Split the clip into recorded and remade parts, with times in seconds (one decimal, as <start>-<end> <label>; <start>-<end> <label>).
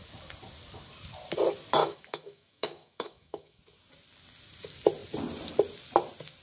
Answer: 0.0-1.8 recorded; 1.8-3.6 remade; 3.6-6.4 recorded